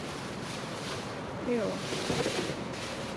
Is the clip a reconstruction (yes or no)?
yes